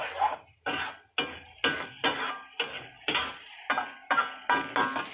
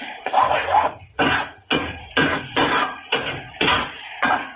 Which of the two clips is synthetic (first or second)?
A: second